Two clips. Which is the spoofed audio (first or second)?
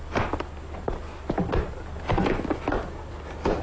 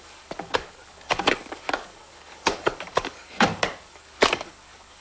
second